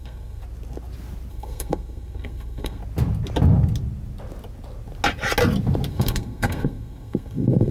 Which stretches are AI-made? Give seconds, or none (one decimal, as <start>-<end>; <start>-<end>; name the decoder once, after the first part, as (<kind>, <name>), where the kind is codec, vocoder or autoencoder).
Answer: 0.0-0.4 (codec, SNAC); 1.3-2.8; 5.9-7.7